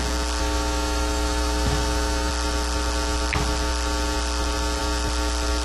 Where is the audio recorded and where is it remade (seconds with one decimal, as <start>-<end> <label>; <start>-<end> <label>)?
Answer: 0.0-0.4 recorded; 0.4-2.3 remade; 2.3-5.6 recorded